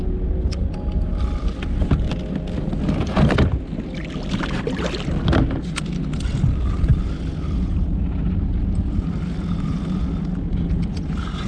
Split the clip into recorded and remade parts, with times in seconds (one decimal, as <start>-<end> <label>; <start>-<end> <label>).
0.0-11.5 recorded